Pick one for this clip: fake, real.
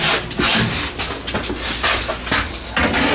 real